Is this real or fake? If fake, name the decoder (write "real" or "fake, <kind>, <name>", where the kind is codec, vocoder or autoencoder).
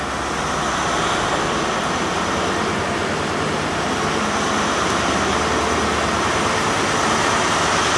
real